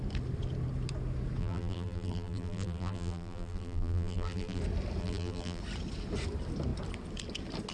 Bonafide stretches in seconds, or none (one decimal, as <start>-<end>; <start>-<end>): 0.0-1.4; 4.6-5.0; 5.6-7.7